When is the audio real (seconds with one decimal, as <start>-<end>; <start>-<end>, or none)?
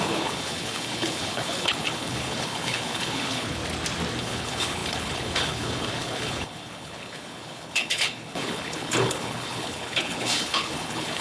3.6-4.2